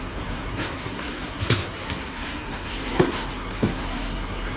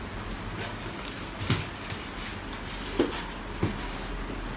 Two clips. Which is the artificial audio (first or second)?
first